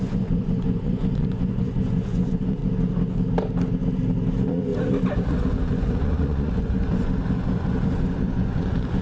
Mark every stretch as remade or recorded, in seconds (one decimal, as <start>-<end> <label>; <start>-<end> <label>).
0.0-2.6 remade; 2.6-4.3 recorded; 4.3-4.7 remade; 4.7-5.3 recorded; 5.3-9.0 remade